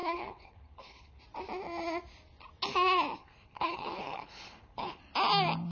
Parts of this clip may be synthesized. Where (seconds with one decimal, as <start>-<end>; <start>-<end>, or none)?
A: 0.0-1.2; 3.2-5.0